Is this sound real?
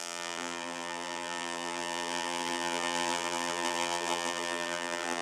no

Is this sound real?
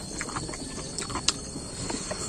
yes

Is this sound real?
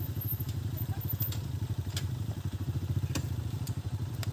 no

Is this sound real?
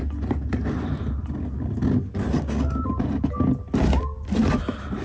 yes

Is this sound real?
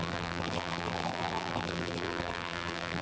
no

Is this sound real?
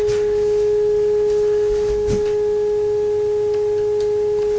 yes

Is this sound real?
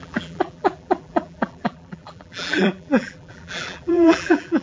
no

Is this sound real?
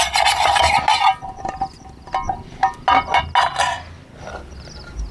yes